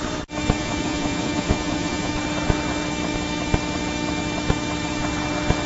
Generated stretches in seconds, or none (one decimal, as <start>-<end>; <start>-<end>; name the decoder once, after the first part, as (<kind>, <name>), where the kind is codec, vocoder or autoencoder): 0.6-2.1 (vocoder, Vocos)